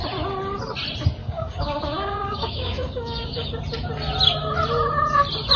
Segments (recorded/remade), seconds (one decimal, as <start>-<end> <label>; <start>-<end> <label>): 0.0-1.2 recorded; 1.2-3.5 remade; 3.5-5.6 recorded